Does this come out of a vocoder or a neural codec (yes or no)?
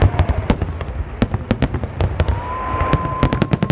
no